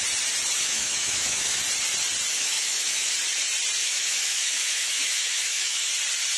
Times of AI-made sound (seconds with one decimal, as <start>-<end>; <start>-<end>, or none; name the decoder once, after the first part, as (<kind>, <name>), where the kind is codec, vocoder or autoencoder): 0.6-1.6 (autoencoder, DAC-VAE); 2.3-3.1; 3.8-5.9